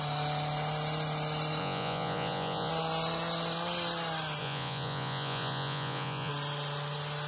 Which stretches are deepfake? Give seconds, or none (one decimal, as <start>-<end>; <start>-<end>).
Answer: 1.6-2.7; 4.4-6.3